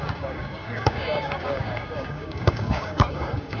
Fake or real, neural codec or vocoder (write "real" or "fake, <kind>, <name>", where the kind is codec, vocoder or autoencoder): fake, codec, DAC